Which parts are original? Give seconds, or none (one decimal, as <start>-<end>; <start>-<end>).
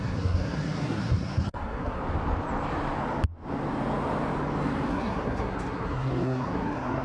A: 2.0-4.9